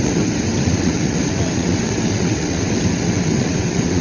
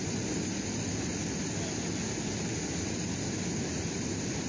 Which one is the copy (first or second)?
first